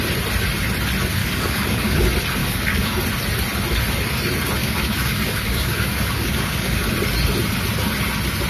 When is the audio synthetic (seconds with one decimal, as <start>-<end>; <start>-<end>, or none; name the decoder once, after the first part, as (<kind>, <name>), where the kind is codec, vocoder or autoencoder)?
1.2-2.0 (codec, DAC); 2.4-2.9; 4.6-6.9